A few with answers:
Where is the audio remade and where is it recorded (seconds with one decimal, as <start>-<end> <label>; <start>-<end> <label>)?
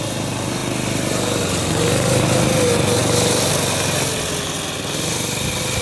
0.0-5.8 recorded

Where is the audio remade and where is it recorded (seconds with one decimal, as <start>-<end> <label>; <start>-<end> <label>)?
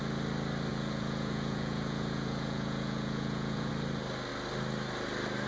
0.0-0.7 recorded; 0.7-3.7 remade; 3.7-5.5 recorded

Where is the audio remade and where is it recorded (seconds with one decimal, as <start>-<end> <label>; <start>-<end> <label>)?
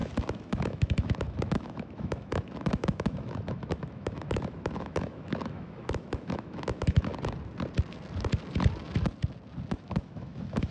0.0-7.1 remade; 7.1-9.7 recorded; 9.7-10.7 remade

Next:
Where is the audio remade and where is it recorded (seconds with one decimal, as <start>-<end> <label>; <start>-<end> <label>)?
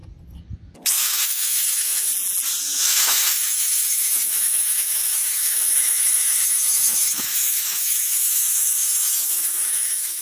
0.0-0.9 recorded; 0.9-2.1 remade; 2.1-2.6 recorded; 2.6-10.2 remade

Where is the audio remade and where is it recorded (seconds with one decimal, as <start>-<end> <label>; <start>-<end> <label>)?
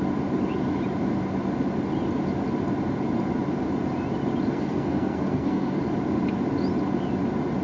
0.0-4.5 recorded; 4.5-5.8 remade; 5.8-7.6 recorded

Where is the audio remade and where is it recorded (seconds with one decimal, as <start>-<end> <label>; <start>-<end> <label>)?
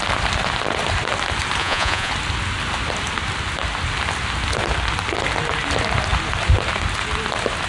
0.0-1.6 recorded; 1.6-2.1 remade; 2.1-7.7 recorded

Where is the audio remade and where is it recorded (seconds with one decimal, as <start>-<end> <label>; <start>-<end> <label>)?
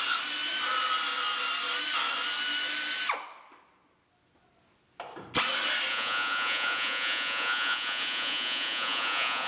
0.0-5.9 recorded; 5.9-9.5 remade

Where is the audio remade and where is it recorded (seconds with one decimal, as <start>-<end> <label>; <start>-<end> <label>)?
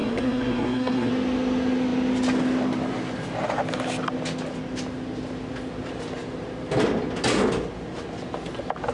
0.0-1.1 remade; 1.1-8.9 recorded